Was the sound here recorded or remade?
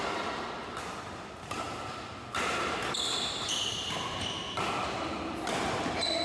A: recorded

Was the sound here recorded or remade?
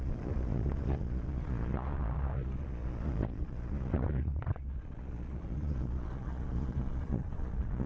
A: remade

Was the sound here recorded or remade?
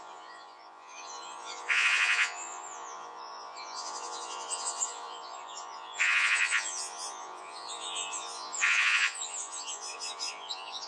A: remade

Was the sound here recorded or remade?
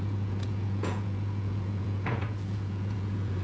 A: remade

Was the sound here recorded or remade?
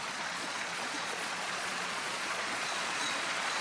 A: remade